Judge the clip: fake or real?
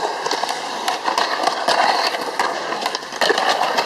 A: fake